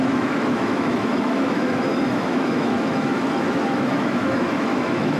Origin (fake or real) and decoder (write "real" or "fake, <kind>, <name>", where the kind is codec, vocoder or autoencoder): fake, autoencoder, DAC-VAE